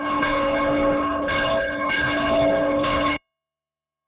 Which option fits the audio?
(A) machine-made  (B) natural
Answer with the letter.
A